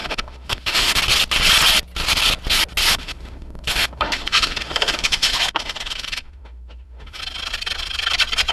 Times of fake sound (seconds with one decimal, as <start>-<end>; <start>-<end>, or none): 0.0-1.0; 2.9-7.2